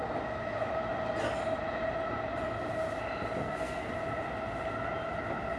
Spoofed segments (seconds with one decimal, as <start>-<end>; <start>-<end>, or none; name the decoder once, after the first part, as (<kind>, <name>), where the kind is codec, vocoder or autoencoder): 3.4-3.9 (codec, SNAC)